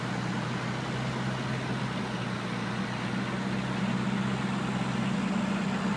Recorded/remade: recorded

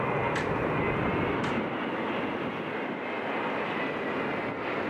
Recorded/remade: recorded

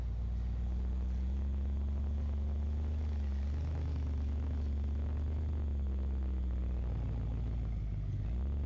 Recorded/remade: recorded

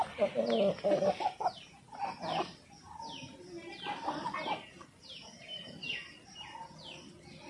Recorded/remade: recorded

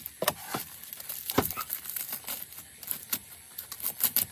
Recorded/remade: recorded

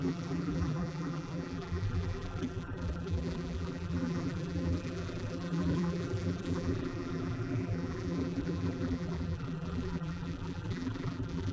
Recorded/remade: remade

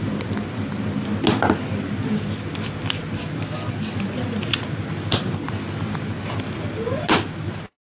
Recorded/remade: recorded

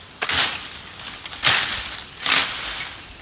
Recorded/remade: recorded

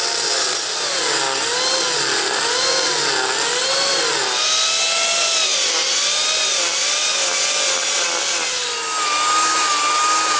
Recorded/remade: recorded